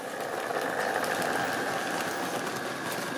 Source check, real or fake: real